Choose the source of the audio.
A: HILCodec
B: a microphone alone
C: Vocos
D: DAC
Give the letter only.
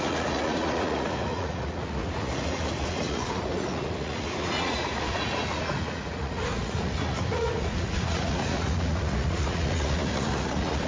C